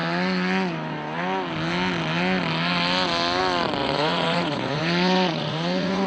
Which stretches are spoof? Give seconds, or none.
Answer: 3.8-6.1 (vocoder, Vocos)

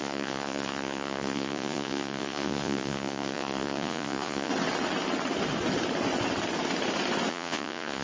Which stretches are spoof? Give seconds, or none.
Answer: 0.0-4.5 (vocoder, Vocos); 7.3-8.0